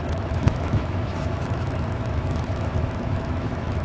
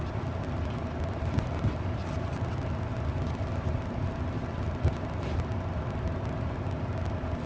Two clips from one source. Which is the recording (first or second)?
second